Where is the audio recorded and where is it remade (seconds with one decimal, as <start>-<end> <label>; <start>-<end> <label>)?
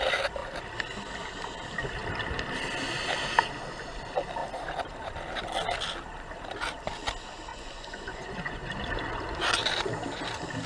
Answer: 0.0-7.5 recorded; 7.5-8.7 remade; 8.7-10.7 recorded